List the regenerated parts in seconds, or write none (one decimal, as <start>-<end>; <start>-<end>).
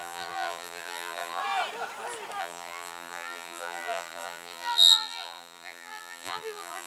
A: 0.0-1.4; 2.4-6.9